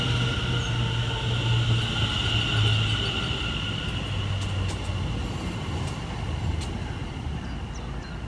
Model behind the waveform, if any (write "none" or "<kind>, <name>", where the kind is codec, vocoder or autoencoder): none